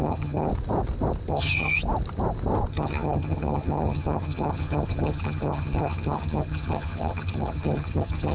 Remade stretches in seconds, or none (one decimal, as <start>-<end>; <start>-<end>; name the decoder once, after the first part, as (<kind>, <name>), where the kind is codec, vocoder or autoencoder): 0.0-0.5 (vocoder, HiFi-GAN); 1.3-1.8; 2.7-8.3